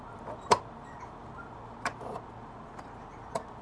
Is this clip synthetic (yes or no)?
no